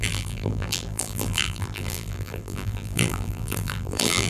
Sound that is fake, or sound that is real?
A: fake